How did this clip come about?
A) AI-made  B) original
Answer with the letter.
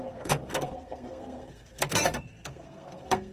A